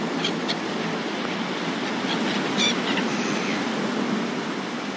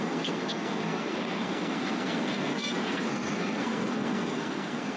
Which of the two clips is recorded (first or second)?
first